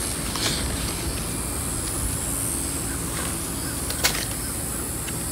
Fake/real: real